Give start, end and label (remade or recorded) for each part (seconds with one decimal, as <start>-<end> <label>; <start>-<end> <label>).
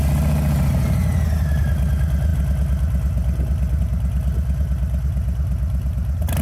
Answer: 0.0-6.4 recorded